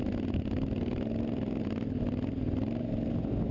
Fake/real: real